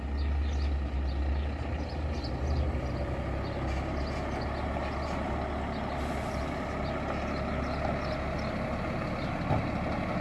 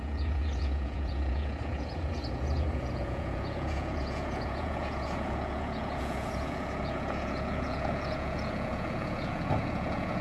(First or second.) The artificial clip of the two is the second